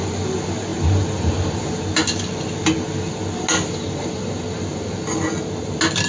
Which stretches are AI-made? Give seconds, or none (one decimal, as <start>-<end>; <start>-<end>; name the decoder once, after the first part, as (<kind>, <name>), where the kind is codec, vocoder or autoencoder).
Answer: none